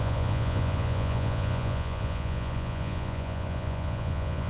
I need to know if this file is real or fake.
fake